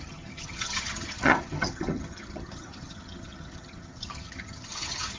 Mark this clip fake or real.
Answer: fake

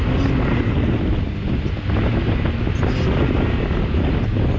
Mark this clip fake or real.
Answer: real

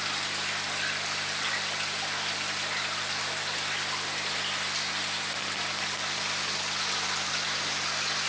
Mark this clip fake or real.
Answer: real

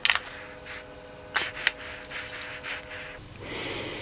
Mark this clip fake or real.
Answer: real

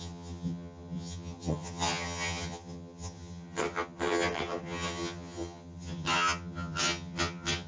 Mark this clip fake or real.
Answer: fake